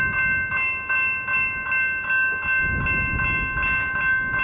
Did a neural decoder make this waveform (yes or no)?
no